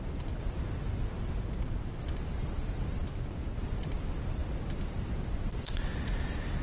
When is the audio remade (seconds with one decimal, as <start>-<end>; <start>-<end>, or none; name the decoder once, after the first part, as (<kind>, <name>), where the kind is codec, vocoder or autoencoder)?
1.9-3.9 (vocoder, BigVGAN v2); 4.4-5.9